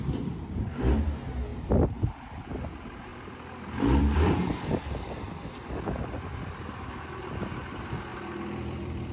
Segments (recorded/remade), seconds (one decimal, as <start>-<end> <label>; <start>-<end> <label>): 0.0-3.1 recorded; 3.1-6.5 remade; 6.5-8.1 recorded; 8.1-9.1 remade